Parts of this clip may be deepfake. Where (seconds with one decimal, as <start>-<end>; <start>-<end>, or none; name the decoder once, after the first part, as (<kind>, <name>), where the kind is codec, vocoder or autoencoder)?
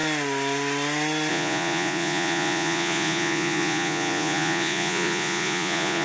1.3-6.0 (vocoder, Vocos)